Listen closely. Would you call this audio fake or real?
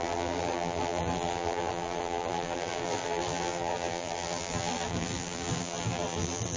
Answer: fake